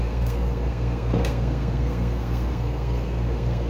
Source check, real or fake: fake